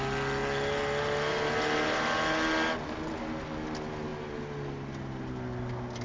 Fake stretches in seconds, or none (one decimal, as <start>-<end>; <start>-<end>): none

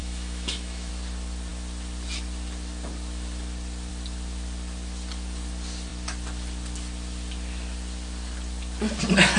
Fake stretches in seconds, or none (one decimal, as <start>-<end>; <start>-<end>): 0.0-0.9